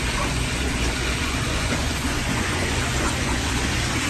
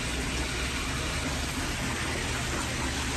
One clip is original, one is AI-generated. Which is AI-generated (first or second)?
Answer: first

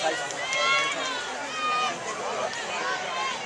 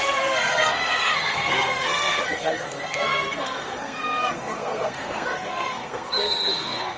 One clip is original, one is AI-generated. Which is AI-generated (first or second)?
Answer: second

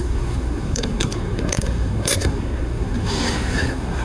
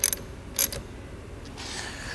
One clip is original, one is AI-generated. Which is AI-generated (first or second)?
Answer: first